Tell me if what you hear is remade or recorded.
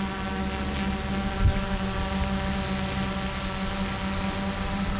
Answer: recorded